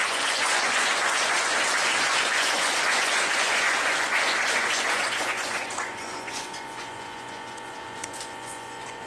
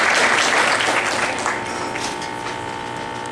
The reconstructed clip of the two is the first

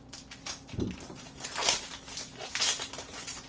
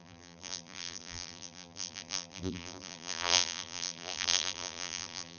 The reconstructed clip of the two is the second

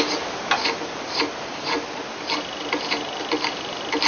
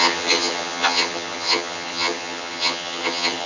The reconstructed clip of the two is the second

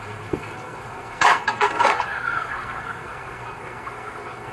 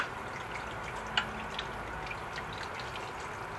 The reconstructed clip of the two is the first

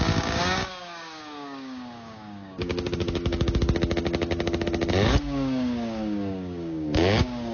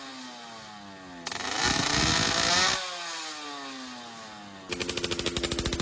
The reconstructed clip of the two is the first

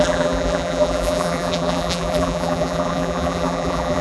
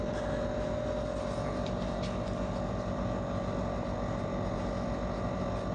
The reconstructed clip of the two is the first